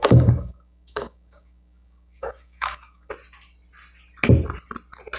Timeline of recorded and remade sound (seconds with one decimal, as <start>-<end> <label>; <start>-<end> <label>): 0.0-3.1 remade; 3.1-5.2 recorded